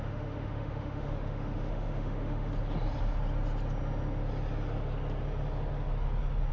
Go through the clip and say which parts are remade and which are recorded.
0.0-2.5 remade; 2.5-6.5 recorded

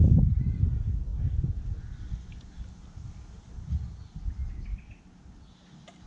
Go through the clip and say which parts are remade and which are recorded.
0.0-6.1 recorded

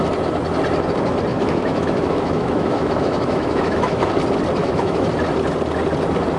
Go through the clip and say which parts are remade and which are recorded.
0.0-1.3 recorded; 1.3-4.1 remade; 4.1-4.6 recorded; 4.6-5.1 remade; 5.1-6.4 recorded

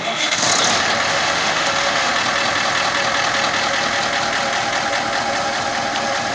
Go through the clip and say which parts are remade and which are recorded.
0.0-0.5 remade; 0.5-1.1 recorded; 1.1-2.1 remade; 2.1-6.3 recorded